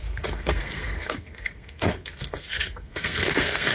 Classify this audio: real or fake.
fake